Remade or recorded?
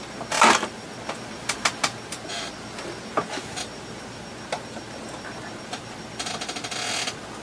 recorded